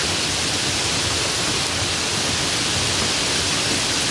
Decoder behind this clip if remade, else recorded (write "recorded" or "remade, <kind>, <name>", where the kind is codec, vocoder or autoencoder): recorded